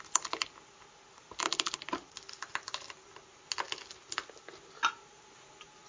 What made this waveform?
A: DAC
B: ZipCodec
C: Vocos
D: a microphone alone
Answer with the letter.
D